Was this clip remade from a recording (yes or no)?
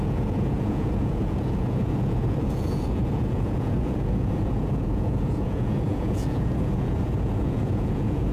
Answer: yes